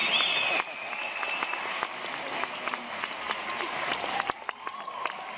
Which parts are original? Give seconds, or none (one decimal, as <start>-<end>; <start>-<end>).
0.0-5.4